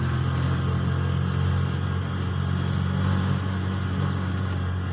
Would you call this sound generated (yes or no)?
no